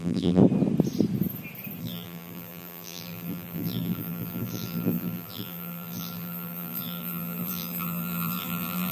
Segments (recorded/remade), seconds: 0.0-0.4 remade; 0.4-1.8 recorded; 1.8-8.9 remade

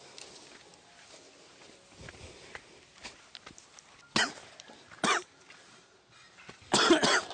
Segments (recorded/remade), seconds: 0.0-7.3 recorded